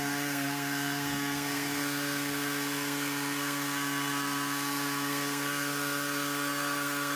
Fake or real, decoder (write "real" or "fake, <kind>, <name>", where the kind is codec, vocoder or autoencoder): fake, codec, SNAC